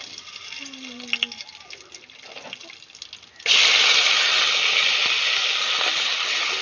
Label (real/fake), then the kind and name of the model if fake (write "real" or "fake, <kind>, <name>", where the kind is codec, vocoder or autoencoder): real